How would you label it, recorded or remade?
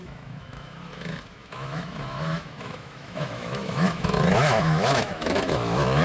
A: remade